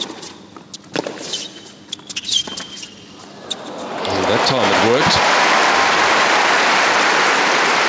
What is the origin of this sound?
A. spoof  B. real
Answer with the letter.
B